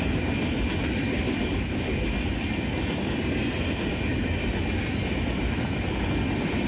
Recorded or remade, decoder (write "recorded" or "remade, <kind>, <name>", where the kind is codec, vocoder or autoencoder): recorded